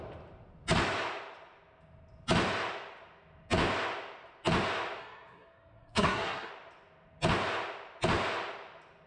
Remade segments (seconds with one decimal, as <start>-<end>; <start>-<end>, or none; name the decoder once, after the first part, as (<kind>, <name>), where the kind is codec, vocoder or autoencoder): 5.0-6.5 (codec, SNAC)